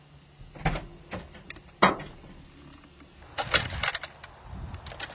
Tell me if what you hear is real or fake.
real